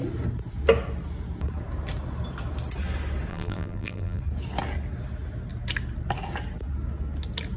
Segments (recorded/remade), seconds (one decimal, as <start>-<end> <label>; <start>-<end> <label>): 0.0-3.3 recorded; 3.3-4.2 remade; 4.2-7.6 recorded